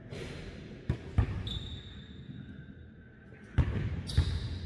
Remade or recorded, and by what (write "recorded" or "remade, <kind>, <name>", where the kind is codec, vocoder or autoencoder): remade, vocoder, BigVGAN v2